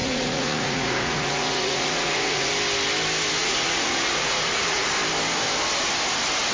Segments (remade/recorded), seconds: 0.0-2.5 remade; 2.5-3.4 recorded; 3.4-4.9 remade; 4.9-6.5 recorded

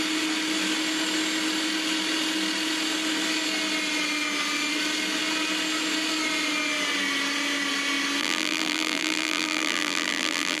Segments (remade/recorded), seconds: 0.0-8.2 recorded; 8.2-10.6 remade

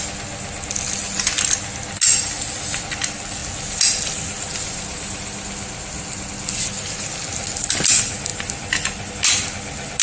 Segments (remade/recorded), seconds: 0.0-10.0 recorded